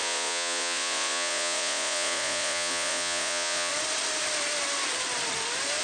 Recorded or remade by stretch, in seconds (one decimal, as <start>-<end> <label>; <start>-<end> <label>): 0.0-3.7 remade; 3.7-5.8 recorded